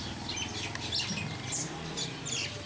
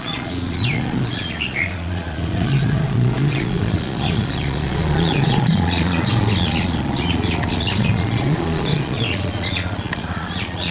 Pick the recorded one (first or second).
first